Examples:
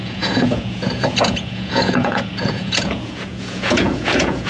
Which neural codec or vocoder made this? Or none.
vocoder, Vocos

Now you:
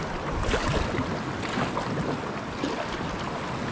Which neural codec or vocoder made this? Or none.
none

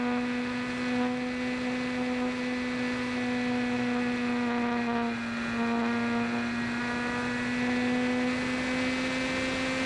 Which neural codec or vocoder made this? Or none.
none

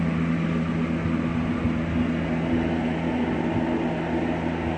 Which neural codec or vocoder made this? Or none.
none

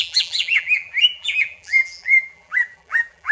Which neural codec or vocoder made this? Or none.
vocoder, BigVGAN v2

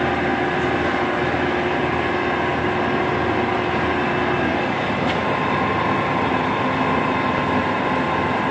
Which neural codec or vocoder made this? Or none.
none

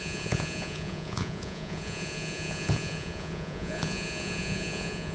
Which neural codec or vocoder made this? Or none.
vocoder, Vocos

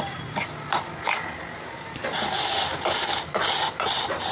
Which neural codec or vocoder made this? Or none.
none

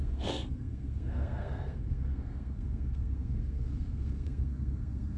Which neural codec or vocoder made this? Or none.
codec, SNAC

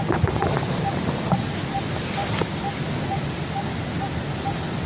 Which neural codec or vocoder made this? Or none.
none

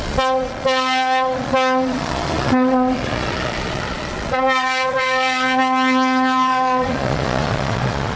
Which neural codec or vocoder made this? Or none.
vocoder, Vocos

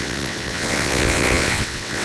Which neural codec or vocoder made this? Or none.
vocoder, WaveNeXt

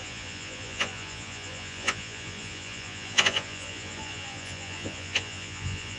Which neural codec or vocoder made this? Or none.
vocoder, Vocos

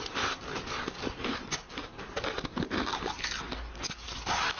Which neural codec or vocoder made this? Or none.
none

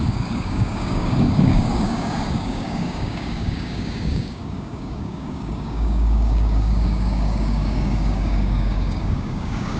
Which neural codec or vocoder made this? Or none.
codec, DAC